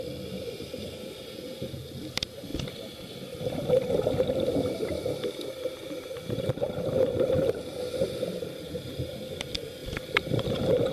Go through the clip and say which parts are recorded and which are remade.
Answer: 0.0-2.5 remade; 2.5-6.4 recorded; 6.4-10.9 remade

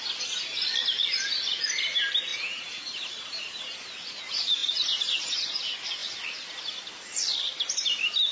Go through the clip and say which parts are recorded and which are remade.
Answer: 0.0-2.3 recorded; 2.3-3.6 remade; 3.6-4.6 recorded; 4.6-5.3 remade; 5.3-8.3 recorded

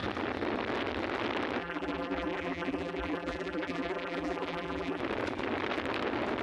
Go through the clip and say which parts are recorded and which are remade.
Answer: 0.0-1.6 recorded; 1.6-5.0 remade; 5.0-6.4 recorded

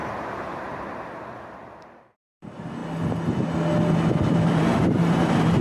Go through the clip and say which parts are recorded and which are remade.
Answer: 0.0-2.8 remade; 2.8-4.3 recorded; 4.3-5.6 remade